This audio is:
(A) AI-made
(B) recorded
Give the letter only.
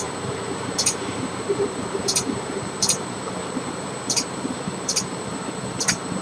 A